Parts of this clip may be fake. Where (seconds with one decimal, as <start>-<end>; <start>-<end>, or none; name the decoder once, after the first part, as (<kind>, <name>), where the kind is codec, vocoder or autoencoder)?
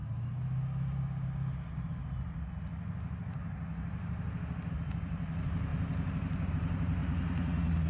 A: 4.7-5.7 (vocoder, BigVGAN v2); 6.5-7.0